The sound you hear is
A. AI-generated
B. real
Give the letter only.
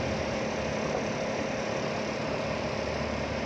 B